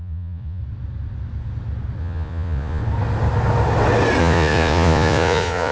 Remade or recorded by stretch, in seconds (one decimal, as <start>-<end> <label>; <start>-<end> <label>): 0.0-0.6 remade; 0.6-2.0 recorded; 2.0-2.8 remade; 2.8-4.2 recorded; 4.2-5.7 remade